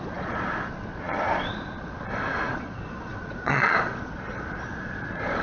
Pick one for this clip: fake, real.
fake